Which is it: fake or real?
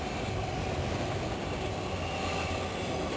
real